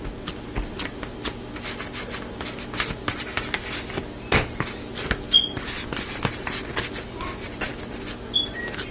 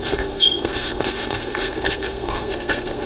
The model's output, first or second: second